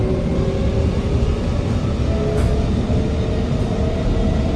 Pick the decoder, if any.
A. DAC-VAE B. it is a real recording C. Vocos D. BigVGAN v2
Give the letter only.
B